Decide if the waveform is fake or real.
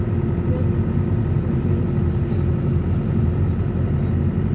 real